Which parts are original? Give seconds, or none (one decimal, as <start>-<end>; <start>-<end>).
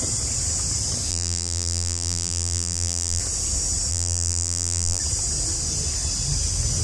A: 0.0-1.1; 3.2-3.9; 5.0-6.8